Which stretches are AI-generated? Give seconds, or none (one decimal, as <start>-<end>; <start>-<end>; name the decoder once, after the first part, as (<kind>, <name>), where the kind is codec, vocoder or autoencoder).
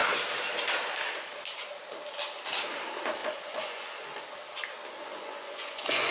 3.2-4.2 (vocoder, Vocos); 5.1-6.1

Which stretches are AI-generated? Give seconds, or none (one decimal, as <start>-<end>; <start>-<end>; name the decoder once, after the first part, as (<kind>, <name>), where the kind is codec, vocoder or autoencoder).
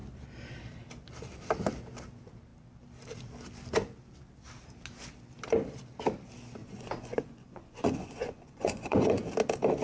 6.6-9.2 (vocoder, Vocos)